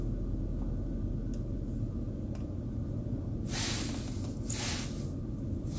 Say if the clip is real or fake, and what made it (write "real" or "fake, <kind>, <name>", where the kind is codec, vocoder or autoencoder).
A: real